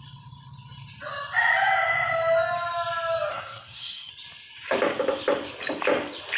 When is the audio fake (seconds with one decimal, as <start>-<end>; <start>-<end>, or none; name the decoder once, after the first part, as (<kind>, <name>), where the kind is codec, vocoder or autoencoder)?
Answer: 3.3-4.1 (codec, SNAC)